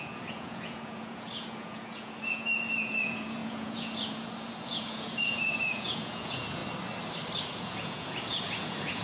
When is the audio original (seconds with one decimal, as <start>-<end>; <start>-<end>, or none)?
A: 6.6-7.4